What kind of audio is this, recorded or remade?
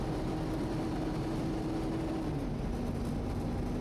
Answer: recorded